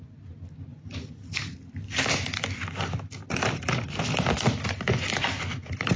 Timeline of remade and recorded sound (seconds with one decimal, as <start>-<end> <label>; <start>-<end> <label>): 0.0-6.0 recorded